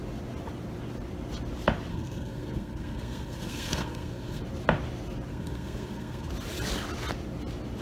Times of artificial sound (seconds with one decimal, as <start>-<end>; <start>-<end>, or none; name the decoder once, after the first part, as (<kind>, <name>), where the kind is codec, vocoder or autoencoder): 1.9-4.4 (codec, SNAC); 5.3-6.3